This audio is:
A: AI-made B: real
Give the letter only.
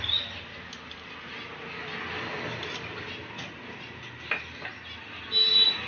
B